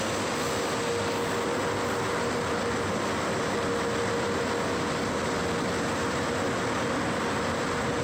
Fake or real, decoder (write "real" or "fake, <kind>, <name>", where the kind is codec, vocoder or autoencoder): real